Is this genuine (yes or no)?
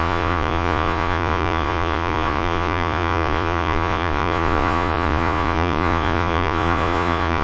no